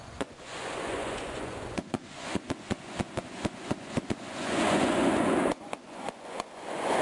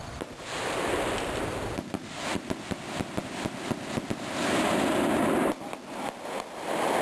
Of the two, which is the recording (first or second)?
second